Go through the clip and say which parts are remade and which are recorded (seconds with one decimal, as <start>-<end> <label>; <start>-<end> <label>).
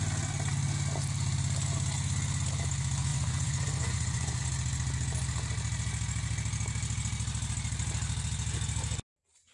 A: 0.0-3.1 recorded; 3.1-4.4 remade; 4.4-9.5 recorded